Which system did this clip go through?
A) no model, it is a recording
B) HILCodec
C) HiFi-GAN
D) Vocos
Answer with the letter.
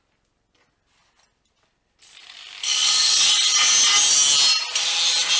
A